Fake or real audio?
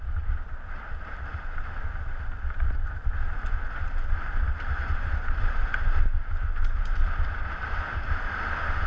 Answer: real